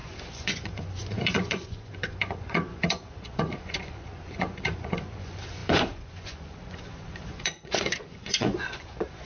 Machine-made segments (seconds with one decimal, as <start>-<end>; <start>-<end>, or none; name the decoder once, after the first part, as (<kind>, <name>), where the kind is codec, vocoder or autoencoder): 0.0-9.3 (vocoder, Vocos)